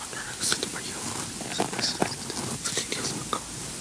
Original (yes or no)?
yes